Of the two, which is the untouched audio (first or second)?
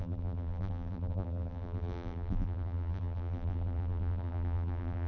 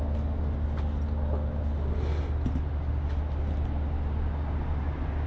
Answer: second